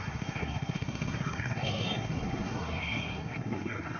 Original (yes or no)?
no